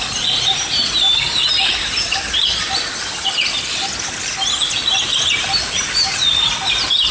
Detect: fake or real real